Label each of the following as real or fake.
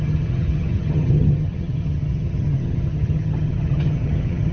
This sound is fake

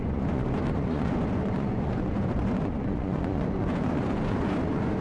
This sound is fake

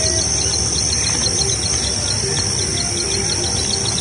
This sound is real